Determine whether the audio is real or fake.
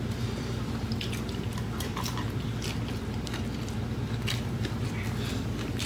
fake